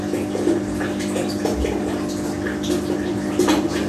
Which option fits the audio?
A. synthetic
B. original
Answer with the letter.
B